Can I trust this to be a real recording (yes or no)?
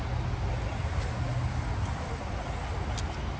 yes